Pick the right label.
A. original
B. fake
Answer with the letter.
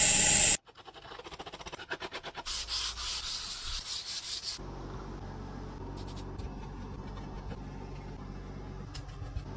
A